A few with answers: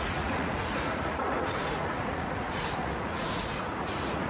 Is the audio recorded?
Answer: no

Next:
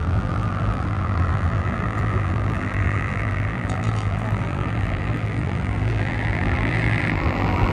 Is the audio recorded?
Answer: no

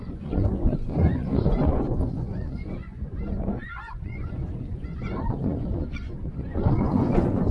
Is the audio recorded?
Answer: no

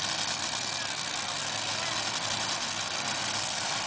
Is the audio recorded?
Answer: yes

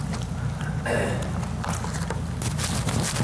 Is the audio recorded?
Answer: yes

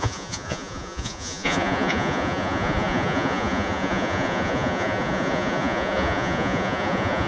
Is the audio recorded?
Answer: no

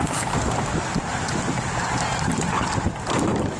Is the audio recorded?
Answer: yes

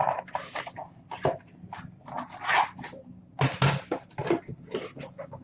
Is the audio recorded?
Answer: yes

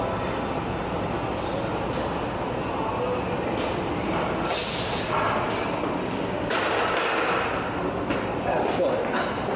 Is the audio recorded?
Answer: yes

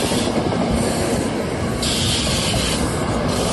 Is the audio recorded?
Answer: yes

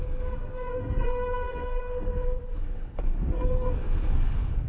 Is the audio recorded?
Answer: no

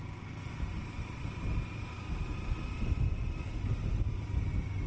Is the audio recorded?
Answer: yes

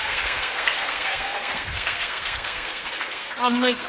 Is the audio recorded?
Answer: no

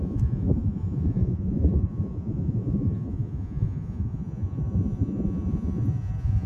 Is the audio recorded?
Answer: no